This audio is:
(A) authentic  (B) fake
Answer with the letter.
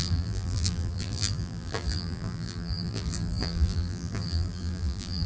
B